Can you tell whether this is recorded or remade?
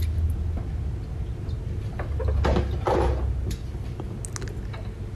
recorded